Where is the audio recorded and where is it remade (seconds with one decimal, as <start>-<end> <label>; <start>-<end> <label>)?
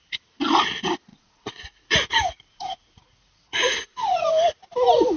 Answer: 0.0-1.1 recorded; 1.1-4.2 remade; 4.2-5.2 recorded